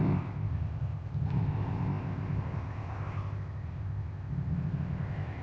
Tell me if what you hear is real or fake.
fake